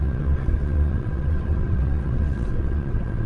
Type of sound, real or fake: fake